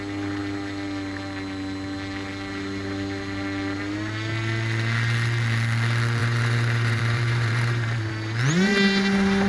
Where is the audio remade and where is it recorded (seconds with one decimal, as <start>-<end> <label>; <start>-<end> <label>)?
0.0-6.2 recorded; 6.2-8.1 remade; 8.1-8.7 recorded; 8.7-9.5 remade